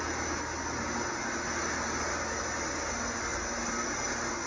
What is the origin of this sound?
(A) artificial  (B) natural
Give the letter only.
B